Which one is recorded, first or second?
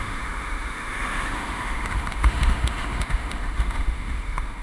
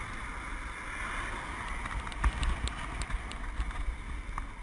second